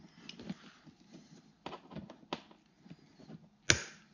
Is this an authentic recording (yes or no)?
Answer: yes